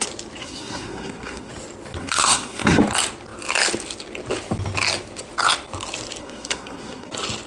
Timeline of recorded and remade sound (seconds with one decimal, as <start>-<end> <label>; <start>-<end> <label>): 0.0-0.4 recorded; 0.4-1.5 remade; 1.5-2.0 recorded; 2.0-2.8 remade; 2.8-6.2 recorded; 6.2-7.1 remade; 7.1-7.5 recorded